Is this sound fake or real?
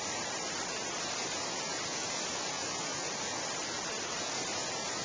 real